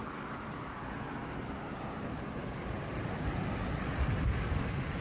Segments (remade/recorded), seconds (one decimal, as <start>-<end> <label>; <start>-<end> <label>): 0.0-5.0 recorded